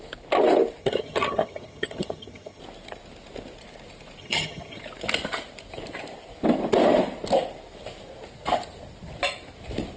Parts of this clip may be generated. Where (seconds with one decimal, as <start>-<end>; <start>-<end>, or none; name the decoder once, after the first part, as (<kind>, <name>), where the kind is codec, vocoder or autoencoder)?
0.8-2.6 (vocoder, HiFi-GAN); 4.2-4.8